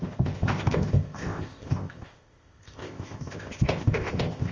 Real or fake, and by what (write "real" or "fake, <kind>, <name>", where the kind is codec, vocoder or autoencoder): fake, codec, ZipCodec